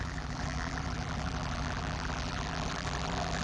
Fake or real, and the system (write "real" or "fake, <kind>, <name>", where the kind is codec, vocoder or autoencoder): fake, vocoder, BigVGAN v2